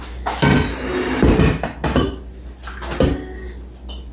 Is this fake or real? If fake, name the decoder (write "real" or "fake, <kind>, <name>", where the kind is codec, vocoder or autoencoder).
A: real